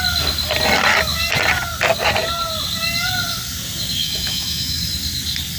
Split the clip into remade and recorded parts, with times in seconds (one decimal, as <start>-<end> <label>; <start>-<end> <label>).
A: 0.0-4.0 recorded; 4.0-4.8 remade; 4.8-5.6 recorded